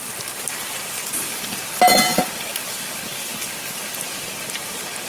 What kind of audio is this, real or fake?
real